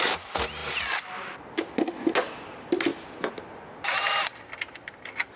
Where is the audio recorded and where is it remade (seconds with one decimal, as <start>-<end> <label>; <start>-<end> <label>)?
0.0-5.4 recorded